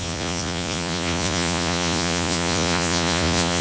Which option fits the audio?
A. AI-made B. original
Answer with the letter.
A